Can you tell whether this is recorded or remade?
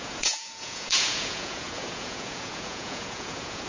remade